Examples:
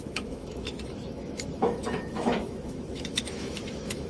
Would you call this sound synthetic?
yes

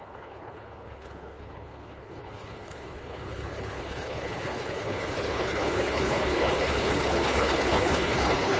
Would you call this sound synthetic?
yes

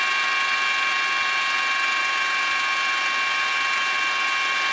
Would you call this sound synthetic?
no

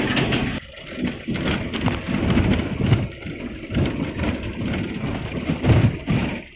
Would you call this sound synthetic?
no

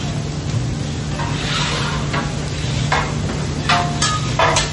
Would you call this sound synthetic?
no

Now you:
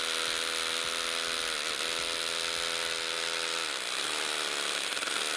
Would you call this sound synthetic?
no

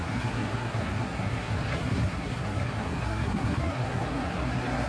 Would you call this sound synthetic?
yes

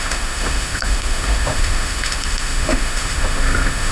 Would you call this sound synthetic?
yes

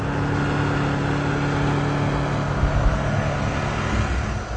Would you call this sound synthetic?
no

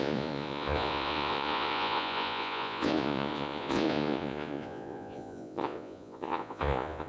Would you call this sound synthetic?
yes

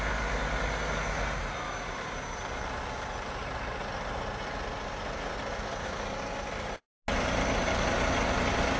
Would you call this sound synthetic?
no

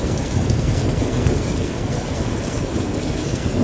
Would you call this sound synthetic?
yes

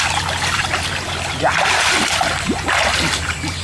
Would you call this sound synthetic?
no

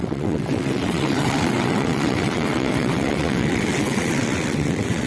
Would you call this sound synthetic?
yes